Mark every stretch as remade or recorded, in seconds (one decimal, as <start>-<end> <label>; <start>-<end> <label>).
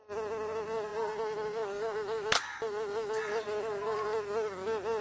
0.0-5.0 recorded